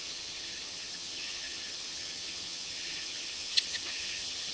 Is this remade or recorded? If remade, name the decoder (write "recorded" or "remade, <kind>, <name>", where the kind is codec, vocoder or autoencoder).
remade, vocoder, HiFi-GAN